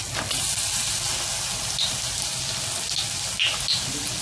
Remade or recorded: recorded